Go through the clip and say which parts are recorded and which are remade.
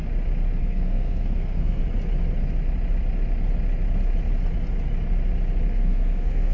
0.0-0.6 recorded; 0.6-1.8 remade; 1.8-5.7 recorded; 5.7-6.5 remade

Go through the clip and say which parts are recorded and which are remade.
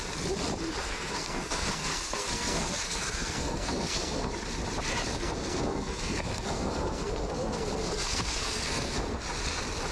0.0-0.8 recorded; 0.8-4.3 remade; 4.3-5.1 recorded; 5.1-9.2 remade; 9.2-9.9 recorded